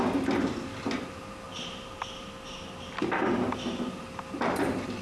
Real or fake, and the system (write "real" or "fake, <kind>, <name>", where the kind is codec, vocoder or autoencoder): real